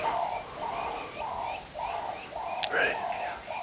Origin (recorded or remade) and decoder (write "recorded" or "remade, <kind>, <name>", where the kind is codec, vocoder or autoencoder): recorded